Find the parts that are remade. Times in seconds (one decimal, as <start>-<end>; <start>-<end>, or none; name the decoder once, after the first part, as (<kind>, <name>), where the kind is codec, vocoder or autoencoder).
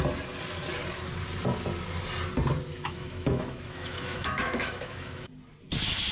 2.7-5.3 (autoencoder, DAC-VAE)